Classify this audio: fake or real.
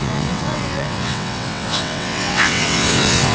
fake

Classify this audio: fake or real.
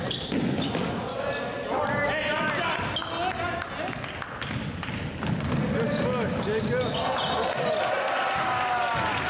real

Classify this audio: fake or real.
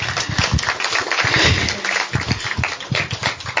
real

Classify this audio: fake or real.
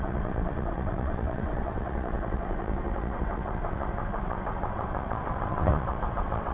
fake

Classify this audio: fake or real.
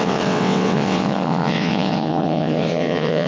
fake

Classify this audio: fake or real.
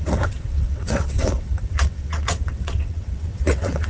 fake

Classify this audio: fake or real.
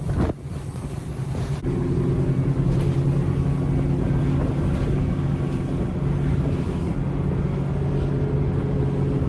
real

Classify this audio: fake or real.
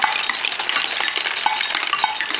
real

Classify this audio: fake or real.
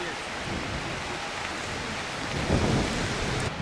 real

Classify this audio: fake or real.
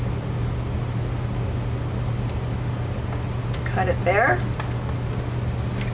real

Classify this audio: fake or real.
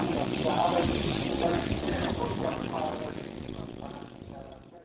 fake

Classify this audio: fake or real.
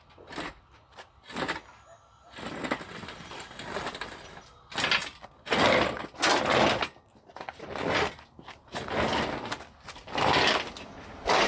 real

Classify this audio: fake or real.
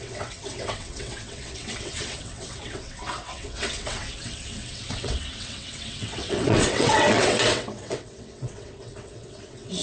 fake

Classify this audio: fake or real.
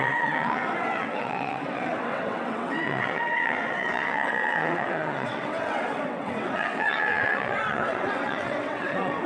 fake